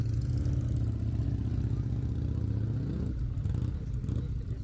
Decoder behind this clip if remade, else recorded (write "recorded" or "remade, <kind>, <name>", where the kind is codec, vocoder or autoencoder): recorded